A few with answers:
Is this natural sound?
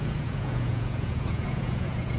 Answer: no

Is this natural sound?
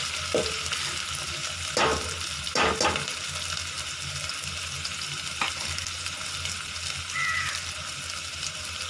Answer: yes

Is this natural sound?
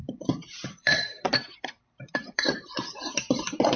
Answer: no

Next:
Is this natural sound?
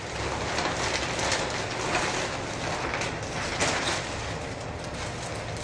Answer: yes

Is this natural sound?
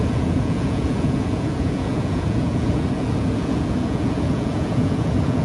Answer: no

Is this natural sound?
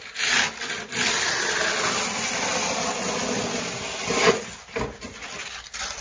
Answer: yes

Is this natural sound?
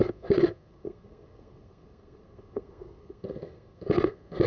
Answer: no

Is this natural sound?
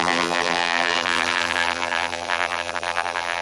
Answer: no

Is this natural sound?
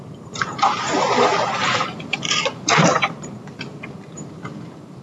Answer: no